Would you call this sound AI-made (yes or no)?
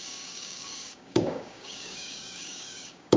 yes